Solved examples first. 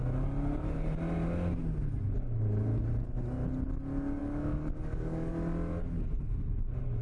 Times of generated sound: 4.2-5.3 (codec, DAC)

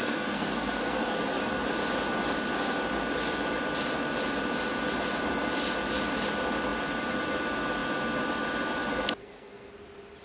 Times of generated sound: 0.0-1.7 (codec, SNAC); 9.2-9.7

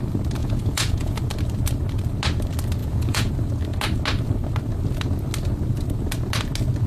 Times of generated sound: 0.4-1.2 (vocoder, Vocos); 2.8-3.3